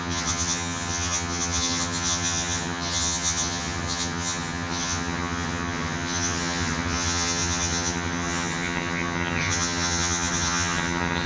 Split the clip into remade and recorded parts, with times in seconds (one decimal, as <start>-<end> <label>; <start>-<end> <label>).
0.0-11.3 remade

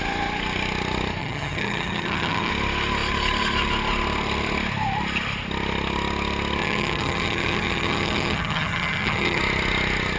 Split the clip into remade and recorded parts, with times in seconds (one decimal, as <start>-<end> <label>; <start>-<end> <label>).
0.0-1.2 recorded; 1.2-2.5 remade; 2.5-6.6 recorded; 6.6-9.4 remade; 9.4-10.2 recorded

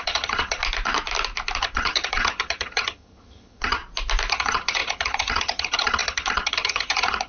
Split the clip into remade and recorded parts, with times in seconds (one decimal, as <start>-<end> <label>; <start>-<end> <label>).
0.0-0.6 remade; 0.6-1.6 recorded; 1.6-3.8 remade; 3.8-4.3 recorded; 4.3-7.3 remade